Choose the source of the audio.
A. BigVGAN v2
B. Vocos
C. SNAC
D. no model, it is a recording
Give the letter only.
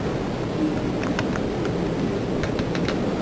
D